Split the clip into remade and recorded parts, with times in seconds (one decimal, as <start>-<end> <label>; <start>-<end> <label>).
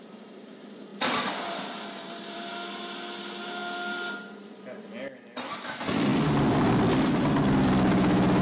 0.0-0.9 recorded; 0.9-2.5 remade; 2.5-8.4 recorded